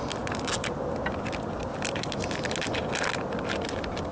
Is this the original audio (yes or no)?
yes